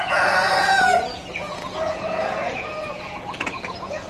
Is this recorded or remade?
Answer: remade